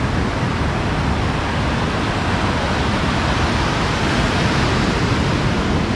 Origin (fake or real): real